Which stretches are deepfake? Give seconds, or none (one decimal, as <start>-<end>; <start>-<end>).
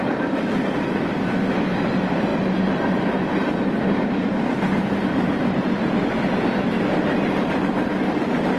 none